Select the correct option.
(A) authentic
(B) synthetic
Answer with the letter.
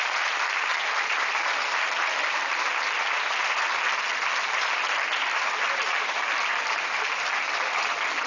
A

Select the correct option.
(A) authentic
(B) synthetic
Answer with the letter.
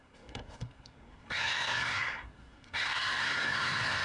B